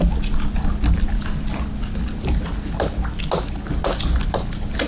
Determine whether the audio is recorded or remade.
recorded